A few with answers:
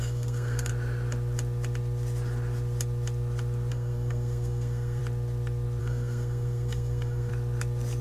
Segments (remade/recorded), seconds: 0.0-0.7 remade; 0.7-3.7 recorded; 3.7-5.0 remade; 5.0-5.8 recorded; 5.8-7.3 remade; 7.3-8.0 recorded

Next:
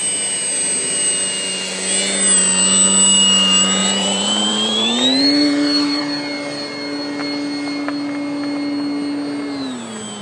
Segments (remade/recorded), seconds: 0.0-3.8 recorded; 3.8-6.0 remade; 6.0-10.2 recorded